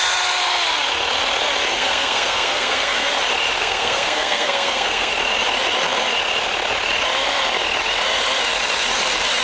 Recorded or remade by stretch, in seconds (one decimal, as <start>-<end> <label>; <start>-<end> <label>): 0.0-1.7 recorded; 1.7-3.1 remade; 3.1-3.6 recorded; 3.6-5.1 remade; 5.1-9.4 recorded